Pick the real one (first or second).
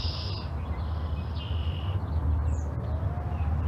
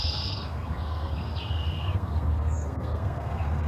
first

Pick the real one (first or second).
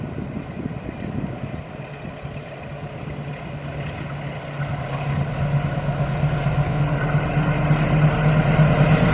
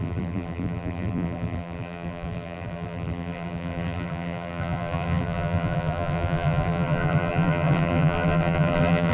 first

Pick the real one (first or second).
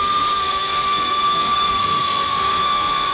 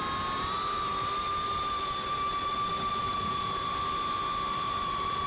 second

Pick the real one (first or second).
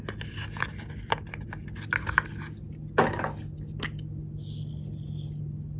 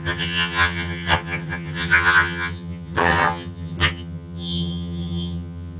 first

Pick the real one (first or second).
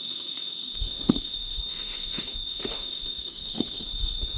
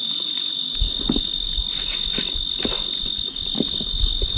second